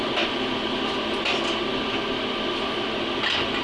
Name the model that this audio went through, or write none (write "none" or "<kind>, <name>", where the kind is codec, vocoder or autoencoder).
none